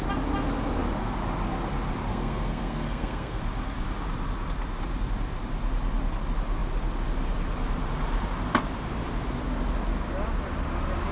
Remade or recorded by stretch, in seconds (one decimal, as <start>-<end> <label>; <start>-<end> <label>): 0.0-2.1 recorded; 2.1-3.4 remade; 3.4-11.1 recorded